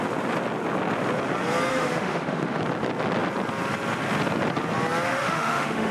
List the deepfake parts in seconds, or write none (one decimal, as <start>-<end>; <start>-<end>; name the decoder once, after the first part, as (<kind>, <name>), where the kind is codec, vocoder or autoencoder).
1.7-2.6 (autoencoder, DAC-VAE); 5.1-5.9